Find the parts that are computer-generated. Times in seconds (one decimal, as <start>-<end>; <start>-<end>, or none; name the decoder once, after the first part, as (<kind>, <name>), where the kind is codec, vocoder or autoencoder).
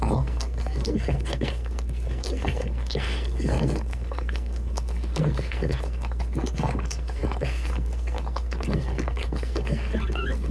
0.0-10.5 (codec, SNAC)